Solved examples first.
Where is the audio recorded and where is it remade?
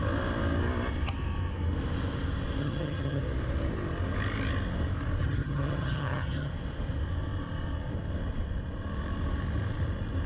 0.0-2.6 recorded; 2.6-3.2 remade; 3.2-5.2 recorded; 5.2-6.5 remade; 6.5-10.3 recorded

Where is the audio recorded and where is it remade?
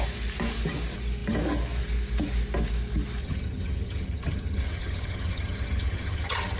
0.0-3.2 recorded; 3.2-6.6 remade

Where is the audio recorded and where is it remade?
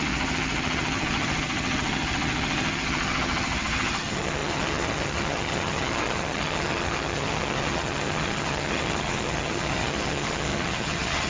0.0-11.3 remade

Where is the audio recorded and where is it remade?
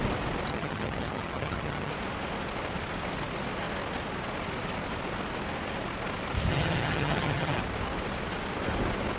0.0-0.5 recorded; 0.5-1.9 remade; 1.9-6.5 recorded; 6.5-7.6 remade; 7.6-9.2 recorded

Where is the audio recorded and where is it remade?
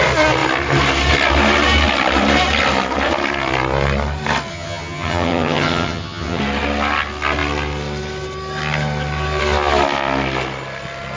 0.0-4.5 recorded; 4.5-6.4 remade; 6.4-11.2 recorded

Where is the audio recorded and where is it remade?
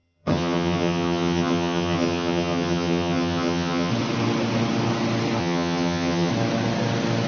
0.0-3.9 remade; 3.9-5.4 recorded; 5.4-6.3 remade; 6.3-7.3 recorded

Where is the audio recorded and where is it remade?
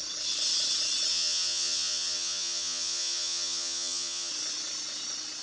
0.0-1.1 recorded; 1.1-4.3 remade; 4.3-5.4 recorded